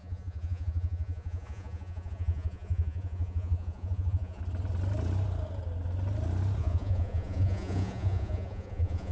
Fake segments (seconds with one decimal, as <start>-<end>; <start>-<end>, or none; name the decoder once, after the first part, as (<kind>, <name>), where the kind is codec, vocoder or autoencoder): 0.0-4.4 (vocoder, Vocos); 6.6-9.1